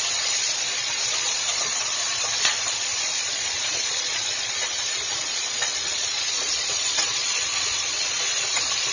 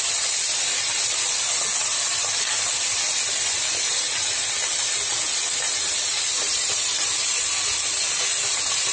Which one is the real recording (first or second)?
second